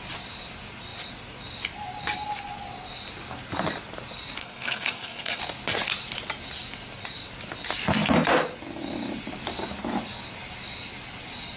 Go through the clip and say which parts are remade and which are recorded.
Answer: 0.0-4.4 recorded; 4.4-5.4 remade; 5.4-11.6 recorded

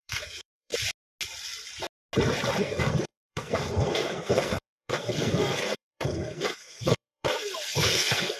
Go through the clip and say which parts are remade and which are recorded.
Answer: 0.0-0.7 remade; 0.7-2.6 recorded; 2.6-8.4 remade